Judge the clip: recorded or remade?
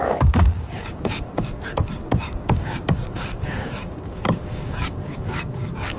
remade